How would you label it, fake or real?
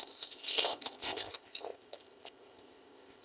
fake